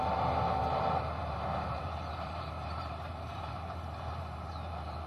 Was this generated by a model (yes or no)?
yes